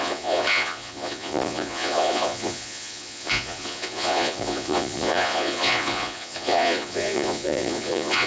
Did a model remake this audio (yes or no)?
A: yes